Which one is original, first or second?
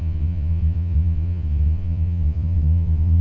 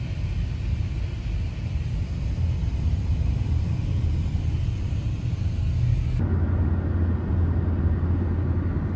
second